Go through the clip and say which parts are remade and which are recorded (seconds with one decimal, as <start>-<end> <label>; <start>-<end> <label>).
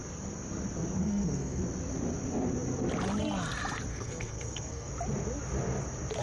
0.0-1.0 recorded; 1.0-1.6 remade; 1.6-3.9 recorded; 3.9-4.9 remade; 4.9-6.2 recorded